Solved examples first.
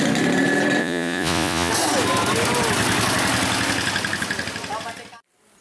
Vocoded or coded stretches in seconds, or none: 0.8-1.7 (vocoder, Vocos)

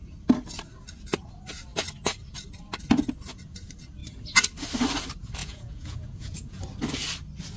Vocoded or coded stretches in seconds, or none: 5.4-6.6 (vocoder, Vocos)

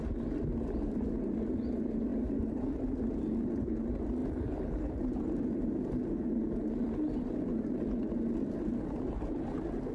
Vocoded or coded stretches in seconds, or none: none